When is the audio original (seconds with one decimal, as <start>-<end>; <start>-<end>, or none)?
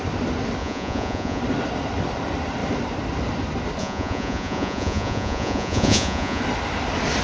0.0-0.6; 1.4-3.8; 6.4-7.2